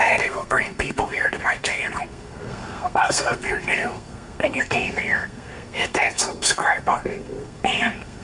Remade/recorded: remade